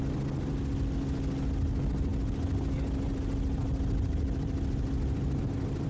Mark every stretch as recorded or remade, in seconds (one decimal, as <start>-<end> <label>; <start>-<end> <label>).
0.0-5.9 recorded